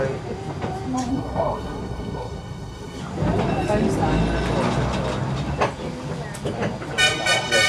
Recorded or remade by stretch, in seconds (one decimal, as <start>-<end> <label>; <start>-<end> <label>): 0.0-1.1 recorded; 1.1-3.0 remade; 3.0-7.7 recorded